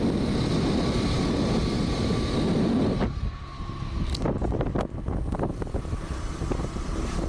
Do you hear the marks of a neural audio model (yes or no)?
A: no